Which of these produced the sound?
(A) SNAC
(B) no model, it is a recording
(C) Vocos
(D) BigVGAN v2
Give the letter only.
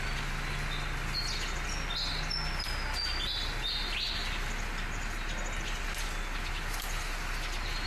B